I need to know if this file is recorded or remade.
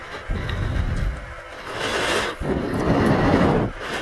recorded